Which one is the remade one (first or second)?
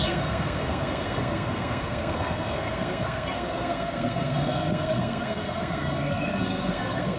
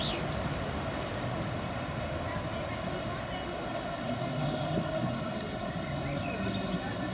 first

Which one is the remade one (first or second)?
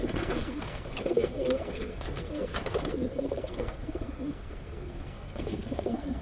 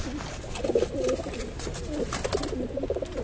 first